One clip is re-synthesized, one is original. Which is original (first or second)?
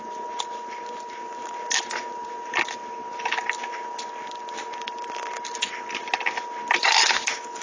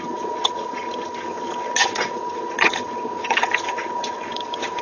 first